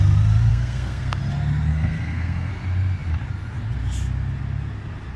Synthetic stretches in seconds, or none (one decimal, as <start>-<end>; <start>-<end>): 0.5-1.2; 1.7-2.5